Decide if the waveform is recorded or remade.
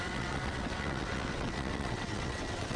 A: remade